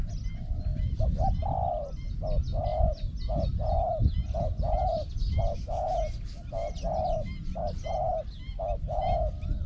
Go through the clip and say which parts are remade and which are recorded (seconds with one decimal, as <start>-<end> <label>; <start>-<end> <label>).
0.0-9.7 recorded